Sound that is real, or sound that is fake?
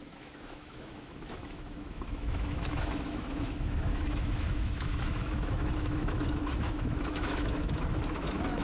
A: fake